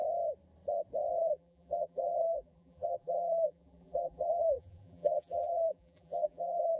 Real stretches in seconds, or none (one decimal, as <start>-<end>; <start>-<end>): 0.0-1.1